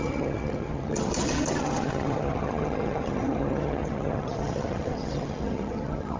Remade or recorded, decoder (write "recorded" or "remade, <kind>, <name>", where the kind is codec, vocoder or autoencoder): remade, vocoder, HiFi-GAN